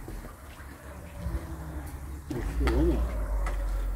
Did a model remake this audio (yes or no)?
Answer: no